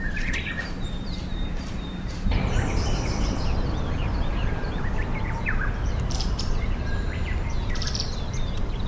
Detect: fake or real fake